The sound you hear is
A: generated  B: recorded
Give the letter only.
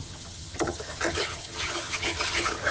A